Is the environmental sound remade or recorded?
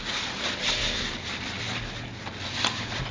recorded